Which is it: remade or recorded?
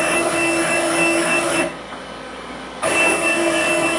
remade